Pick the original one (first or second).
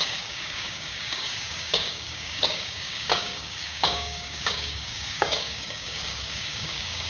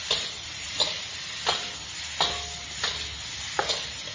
second